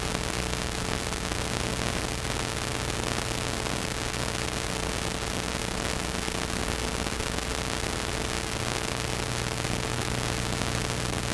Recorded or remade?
recorded